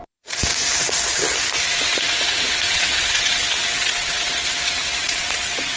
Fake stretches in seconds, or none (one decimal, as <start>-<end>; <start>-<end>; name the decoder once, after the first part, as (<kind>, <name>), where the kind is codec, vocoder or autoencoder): 0.0-0.5 (vocoder, WaveNeXt); 1.7-5.8